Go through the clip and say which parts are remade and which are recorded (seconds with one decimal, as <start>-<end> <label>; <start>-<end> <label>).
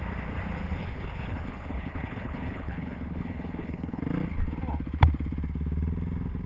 0.0-0.8 recorded; 0.8-4.0 remade; 4.0-6.5 recorded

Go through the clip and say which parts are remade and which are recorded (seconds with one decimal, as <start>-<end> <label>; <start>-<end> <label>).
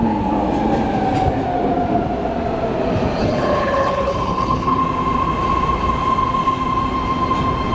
0.0-3.2 recorded; 3.2-4.8 remade; 4.8-7.7 recorded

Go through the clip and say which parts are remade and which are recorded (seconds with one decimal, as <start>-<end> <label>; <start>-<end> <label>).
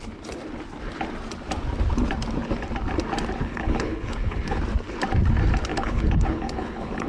0.0-3.4 recorded; 3.4-4.6 remade; 4.6-5.7 recorded; 5.7-7.1 remade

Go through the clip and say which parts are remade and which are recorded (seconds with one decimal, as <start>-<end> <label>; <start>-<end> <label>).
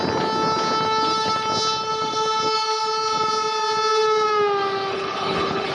0.0-4.9 recorded; 4.9-5.7 remade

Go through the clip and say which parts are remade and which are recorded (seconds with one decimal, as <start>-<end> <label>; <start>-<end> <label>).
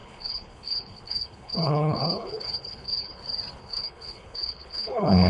0.0-3.2 remade; 3.2-3.6 recorded; 3.6-5.3 remade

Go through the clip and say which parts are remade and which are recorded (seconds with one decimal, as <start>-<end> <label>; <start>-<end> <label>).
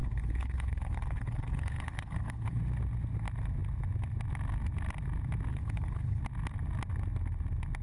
0.0-2.6 remade; 2.6-5.5 recorded; 5.5-6.2 remade; 6.2-7.8 recorded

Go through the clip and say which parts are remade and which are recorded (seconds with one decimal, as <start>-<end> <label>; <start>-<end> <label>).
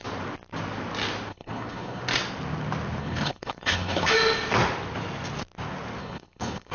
0.0-1.3 recorded; 1.3-2.0 remade; 2.0-3.0 recorded; 3.0-4.1 remade; 4.1-6.0 recorded; 6.0-6.7 remade